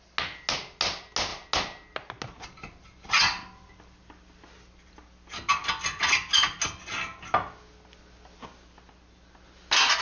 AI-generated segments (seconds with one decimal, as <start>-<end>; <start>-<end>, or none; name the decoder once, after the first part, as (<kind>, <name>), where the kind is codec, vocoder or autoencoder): none